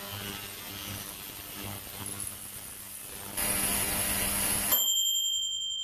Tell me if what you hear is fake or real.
real